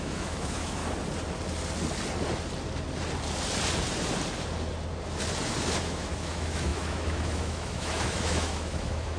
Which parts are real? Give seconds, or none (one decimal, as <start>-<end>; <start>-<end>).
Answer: 0.8-5.8